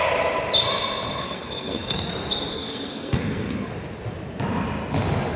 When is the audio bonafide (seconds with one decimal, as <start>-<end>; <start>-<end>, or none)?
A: 0.0-1.2; 2.1-2.5; 3.7-5.4